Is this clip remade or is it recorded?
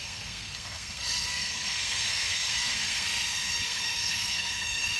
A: remade